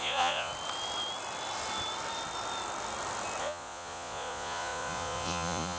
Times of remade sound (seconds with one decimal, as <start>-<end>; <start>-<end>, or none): 0.0-0.5; 3.4-5.8